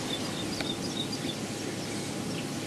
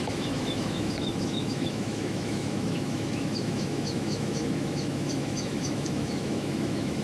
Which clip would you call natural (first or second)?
first